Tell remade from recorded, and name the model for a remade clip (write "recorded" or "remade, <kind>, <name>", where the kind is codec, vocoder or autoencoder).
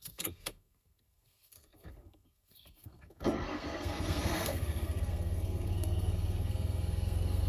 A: remade, codec, SNAC